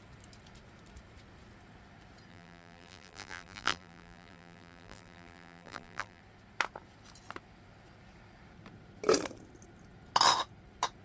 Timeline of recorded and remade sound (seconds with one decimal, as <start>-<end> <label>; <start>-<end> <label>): 0.0-2.3 recorded; 2.3-6.2 remade; 6.2-11.0 recorded

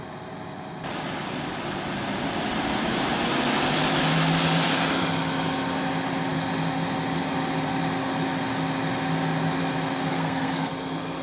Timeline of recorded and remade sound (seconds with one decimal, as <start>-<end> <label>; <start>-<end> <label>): 0.0-10.1 recorded; 10.1-10.7 remade; 10.7-11.2 recorded

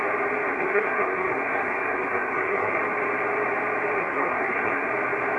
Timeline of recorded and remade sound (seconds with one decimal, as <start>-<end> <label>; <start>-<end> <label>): 0.0-0.5 recorded; 0.5-2.8 remade; 2.8-4.0 recorded; 4.0-4.9 remade; 4.9-5.4 recorded